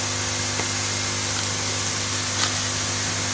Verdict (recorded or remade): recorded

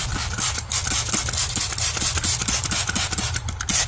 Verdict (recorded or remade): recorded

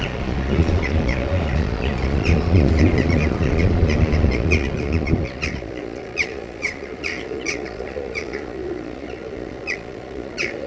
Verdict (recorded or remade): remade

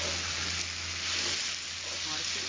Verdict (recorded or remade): recorded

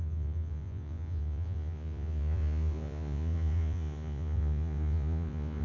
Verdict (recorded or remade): remade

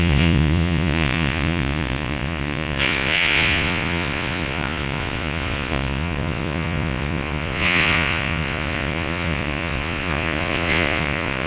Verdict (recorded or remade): remade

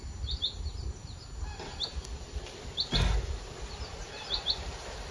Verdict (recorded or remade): recorded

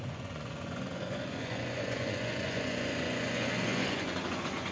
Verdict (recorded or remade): remade